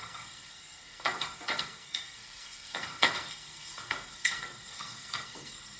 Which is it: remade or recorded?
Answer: remade